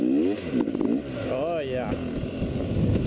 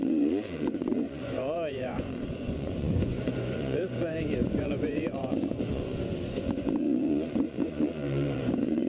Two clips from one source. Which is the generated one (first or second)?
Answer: second